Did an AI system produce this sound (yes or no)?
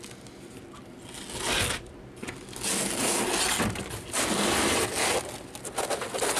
no